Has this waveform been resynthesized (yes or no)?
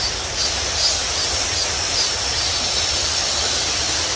no